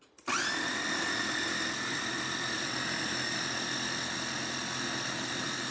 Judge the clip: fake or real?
real